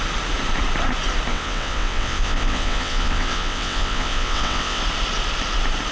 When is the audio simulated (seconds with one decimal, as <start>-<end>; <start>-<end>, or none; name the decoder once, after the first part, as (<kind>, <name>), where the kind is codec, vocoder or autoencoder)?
1.3-4.8 (vocoder, WaveNeXt)